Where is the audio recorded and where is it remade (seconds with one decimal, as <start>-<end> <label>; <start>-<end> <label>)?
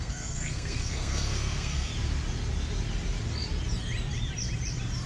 0.0-1.9 remade; 1.9-5.1 recorded